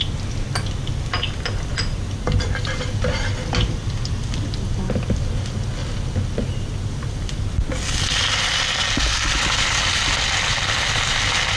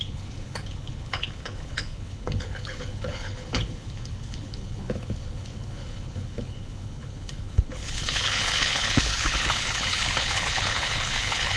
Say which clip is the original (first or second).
first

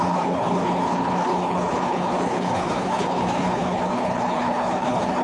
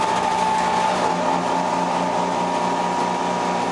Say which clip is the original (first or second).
second